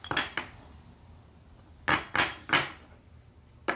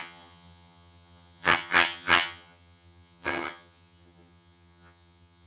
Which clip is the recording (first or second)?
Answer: first